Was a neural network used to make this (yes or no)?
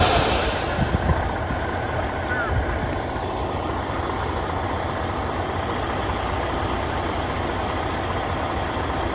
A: no